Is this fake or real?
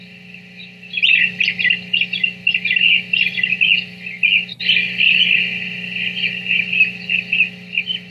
real